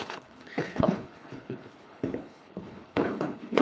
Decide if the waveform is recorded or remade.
remade